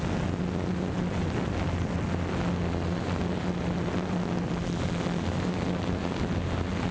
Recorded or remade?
recorded